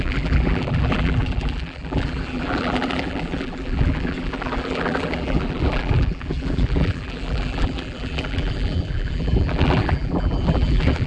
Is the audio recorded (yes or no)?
no